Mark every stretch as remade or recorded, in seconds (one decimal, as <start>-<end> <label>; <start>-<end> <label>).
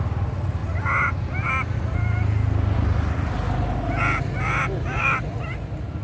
0.0-6.0 recorded